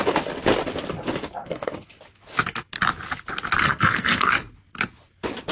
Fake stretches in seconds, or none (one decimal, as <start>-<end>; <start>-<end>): 1.4-1.9; 3.6-4.3